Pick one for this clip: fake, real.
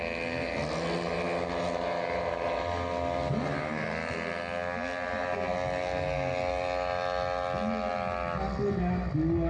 real